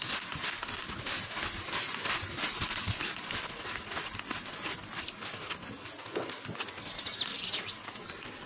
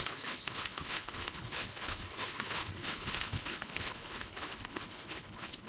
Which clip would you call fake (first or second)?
second